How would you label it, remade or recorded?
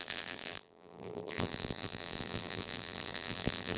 remade